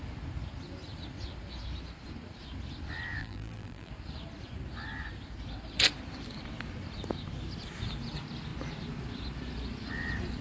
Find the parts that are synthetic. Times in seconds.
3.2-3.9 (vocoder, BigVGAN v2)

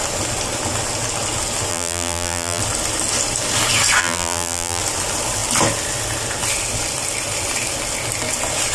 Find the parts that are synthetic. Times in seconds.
1.7-2.6 (vocoder, BigVGAN v2); 4.0-4.8

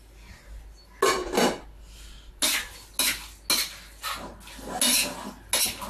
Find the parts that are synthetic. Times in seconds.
none

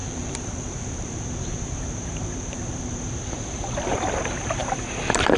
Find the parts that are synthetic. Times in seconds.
0.0-3.2 (vocoder, BigVGAN v2)

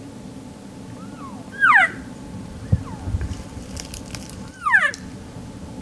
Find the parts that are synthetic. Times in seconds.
1.4-4.8 (vocoder, BigVGAN v2)